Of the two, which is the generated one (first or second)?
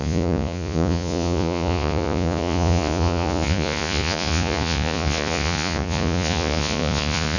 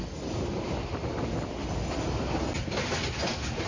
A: first